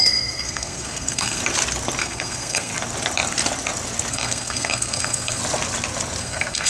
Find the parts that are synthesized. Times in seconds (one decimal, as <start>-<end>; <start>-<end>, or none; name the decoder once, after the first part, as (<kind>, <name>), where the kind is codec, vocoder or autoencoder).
0.0-1.4 (codec, SNAC); 2.0-2.7; 4.1-5.4; 6.2-6.7